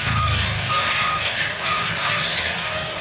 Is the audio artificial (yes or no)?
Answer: yes